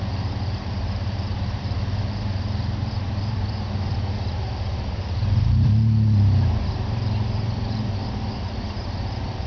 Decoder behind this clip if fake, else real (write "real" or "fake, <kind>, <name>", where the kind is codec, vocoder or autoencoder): fake, vocoder, BigVGAN v2